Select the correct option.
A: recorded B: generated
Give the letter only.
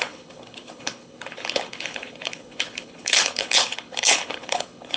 B